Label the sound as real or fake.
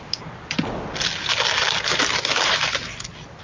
real